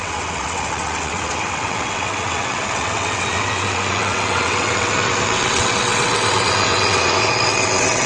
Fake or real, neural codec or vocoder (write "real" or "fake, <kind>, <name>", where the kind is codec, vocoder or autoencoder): fake, vocoder, WaveNeXt